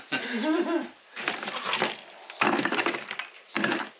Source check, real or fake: real